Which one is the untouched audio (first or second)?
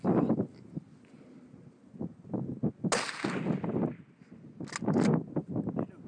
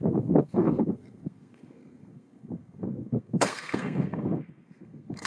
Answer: first